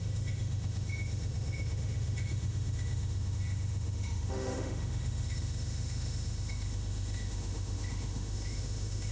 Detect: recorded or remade remade